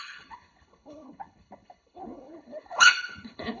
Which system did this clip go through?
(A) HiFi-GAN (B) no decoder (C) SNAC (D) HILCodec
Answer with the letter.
D